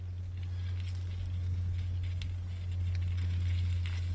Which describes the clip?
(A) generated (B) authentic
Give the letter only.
B